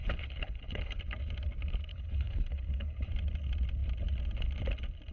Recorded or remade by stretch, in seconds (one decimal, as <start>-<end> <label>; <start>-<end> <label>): 0.0-1.0 remade; 1.0-1.9 recorded; 1.9-3.1 remade; 3.1-5.1 recorded